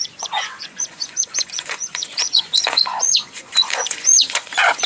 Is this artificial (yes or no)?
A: yes